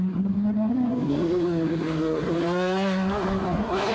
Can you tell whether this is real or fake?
fake